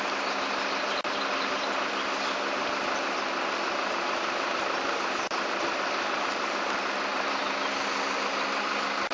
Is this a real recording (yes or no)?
yes